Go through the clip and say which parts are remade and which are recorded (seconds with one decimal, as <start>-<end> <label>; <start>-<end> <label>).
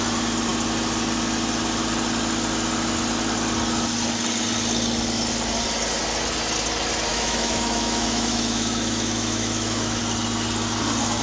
0.0-7.1 recorded; 7.1-10.0 remade; 10.0-11.2 recorded